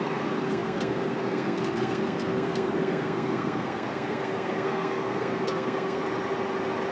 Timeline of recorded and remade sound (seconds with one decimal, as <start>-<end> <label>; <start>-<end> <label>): 0.0-6.0 remade; 6.0-6.9 recorded